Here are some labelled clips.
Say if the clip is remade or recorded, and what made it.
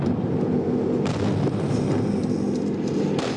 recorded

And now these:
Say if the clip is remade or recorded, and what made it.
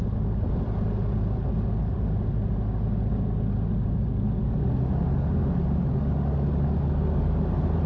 recorded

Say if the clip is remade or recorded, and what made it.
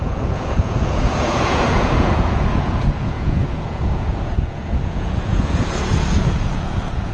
remade, vocoder, Vocos